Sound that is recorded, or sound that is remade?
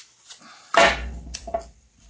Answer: remade